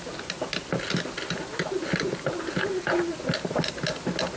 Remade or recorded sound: recorded